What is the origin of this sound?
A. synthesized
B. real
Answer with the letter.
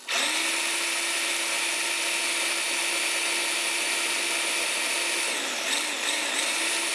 B